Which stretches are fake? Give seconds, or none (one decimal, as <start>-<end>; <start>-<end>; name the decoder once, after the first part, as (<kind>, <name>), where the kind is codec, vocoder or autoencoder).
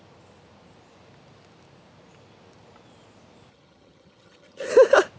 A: 3.5-4.7 (vocoder, HiFi-GAN)